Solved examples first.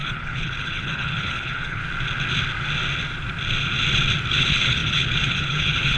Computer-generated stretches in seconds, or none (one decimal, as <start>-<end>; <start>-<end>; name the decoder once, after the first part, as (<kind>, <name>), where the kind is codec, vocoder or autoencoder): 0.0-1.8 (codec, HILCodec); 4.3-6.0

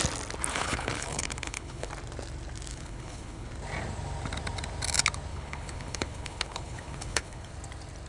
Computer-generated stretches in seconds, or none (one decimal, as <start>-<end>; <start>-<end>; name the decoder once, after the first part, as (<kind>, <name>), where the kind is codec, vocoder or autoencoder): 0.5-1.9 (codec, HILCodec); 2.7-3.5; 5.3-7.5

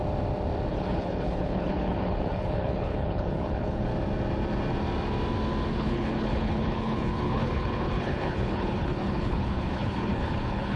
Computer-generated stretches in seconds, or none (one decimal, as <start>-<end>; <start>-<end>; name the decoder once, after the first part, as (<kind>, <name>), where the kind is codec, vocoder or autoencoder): 0.7-3.9 (codec, HILCodec); 5.7-10.8